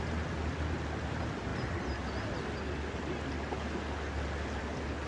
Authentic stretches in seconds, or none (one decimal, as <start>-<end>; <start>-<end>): 0.0-5.1

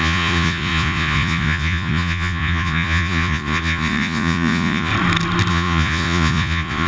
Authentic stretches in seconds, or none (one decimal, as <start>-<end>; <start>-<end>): 4.9-5.5

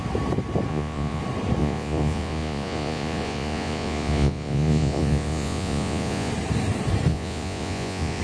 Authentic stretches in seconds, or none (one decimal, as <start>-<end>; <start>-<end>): 0.0-0.7; 1.2-1.6; 6.3-7.1